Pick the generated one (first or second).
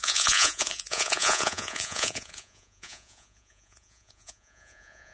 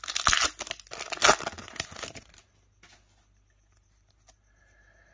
first